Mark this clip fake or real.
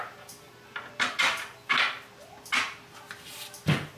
real